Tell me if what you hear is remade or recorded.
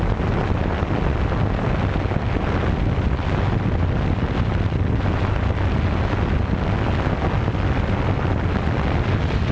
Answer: recorded